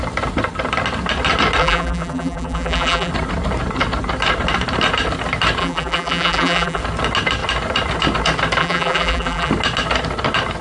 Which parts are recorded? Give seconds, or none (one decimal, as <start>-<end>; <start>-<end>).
0.0-1.6; 3.1-5.6; 6.8-8.6; 9.5-10.6

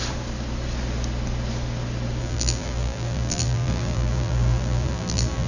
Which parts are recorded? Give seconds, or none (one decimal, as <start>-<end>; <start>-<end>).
0.0-2.2

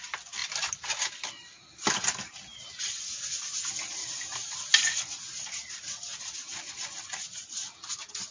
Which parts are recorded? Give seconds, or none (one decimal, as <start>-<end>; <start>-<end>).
0.0-8.3

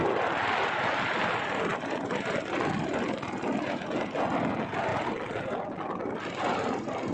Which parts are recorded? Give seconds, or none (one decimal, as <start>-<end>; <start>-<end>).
1.1-7.1

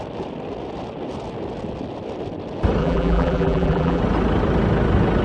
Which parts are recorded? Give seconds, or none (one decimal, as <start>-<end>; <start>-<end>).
0.0-2.8; 4.0-5.2

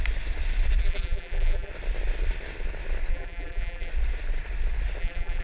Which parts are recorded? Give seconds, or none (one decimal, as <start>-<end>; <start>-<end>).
0.0-0.8; 1.7-3.1; 3.9-5.0

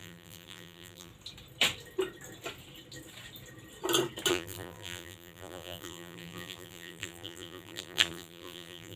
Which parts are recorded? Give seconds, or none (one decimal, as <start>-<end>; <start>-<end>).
1.1-4.3